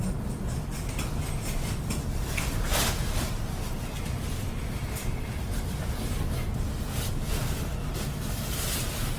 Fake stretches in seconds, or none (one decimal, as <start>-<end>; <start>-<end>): 5.0-5.6